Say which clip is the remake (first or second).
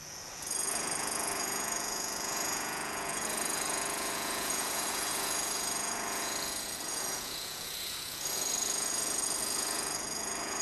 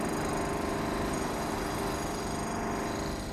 first